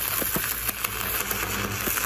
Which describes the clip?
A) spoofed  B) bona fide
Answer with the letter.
B